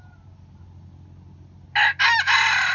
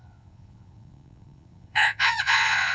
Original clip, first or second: first